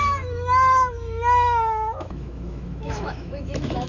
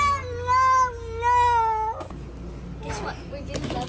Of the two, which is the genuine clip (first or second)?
second